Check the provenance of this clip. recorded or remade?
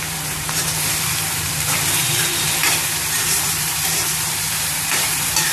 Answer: remade